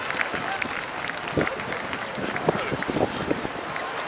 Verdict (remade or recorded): recorded